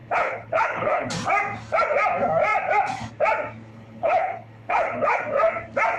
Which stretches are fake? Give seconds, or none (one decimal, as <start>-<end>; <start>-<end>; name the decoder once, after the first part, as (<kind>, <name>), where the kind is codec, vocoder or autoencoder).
0.0-1.1 (codec, HILCodec); 3.7-5.2